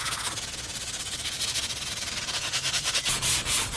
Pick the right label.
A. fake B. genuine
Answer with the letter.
A